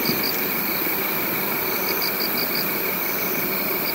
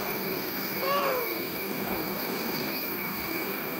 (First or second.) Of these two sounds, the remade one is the second